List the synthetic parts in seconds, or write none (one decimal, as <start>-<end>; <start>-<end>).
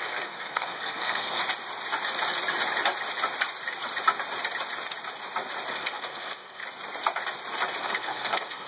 0.0-1.4; 5.7-6.6; 7.8-8.7